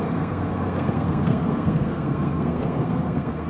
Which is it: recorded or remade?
remade